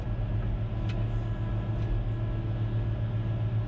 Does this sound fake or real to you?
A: real